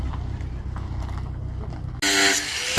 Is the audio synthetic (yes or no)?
no